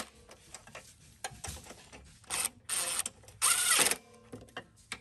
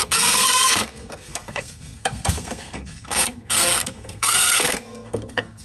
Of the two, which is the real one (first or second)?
first